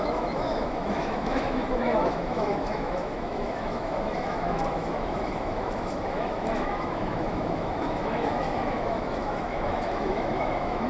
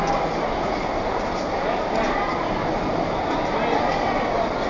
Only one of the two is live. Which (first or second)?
second